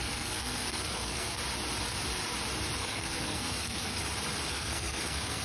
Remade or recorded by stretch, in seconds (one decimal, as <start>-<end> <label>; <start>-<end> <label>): 0.0-1.4 remade; 1.4-2.8 recorded; 2.8-4.0 remade; 4.0-4.5 recorded; 4.5-5.4 remade